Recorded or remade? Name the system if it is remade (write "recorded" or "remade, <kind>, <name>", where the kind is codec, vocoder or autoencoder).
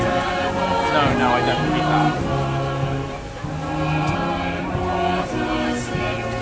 recorded